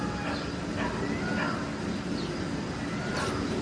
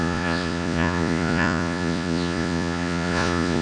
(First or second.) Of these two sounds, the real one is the first